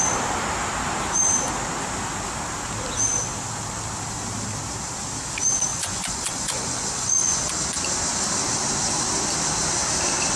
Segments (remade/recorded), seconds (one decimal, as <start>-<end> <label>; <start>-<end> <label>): 0.0-5.7 recorded; 5.7-7.5 remade; 7.5-10.4 recorded